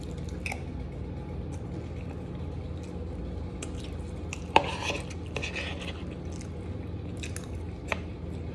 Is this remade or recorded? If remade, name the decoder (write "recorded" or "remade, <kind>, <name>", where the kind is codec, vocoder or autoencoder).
recorded